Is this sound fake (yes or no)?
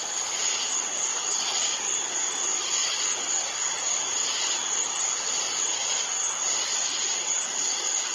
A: no